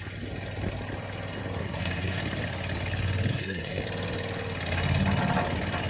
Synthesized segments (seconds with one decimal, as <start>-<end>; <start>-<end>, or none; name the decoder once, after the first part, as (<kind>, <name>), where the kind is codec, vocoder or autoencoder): 1.6-2.2 (codec, SNAC); 3.3-3.8